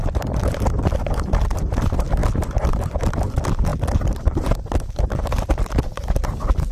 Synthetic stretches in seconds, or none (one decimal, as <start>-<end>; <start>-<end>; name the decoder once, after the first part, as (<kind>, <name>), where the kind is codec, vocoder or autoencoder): 0.0-2.2 (vocoder, BigVGAN v2); 2.7-6.7